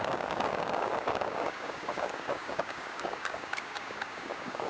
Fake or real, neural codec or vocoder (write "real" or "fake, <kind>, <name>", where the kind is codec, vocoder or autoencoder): fake, codec, DAC